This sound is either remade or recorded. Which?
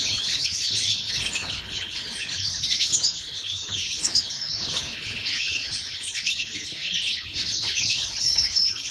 remade